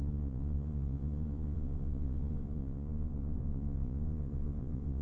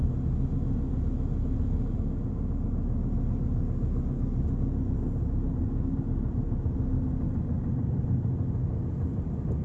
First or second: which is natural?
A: second